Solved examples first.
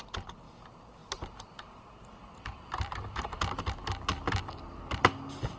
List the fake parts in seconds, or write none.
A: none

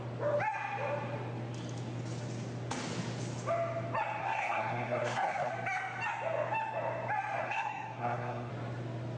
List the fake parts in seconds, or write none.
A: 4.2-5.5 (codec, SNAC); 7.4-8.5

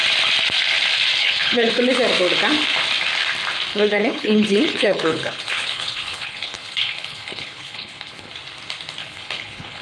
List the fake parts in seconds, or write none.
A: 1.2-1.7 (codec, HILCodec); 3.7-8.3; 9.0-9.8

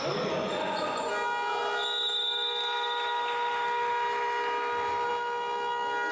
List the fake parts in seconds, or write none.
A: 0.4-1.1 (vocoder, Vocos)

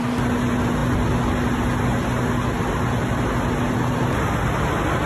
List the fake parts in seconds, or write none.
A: none

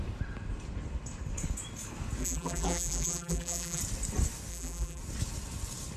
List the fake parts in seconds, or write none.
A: 2.2-3.8 (vocoder, BigVGAN v2); 4.5-5.0